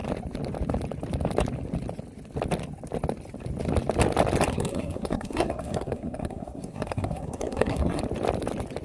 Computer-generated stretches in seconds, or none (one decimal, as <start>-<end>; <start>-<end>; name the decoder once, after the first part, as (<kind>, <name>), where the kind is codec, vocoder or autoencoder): 4.5-8.0 (codec, SNAC)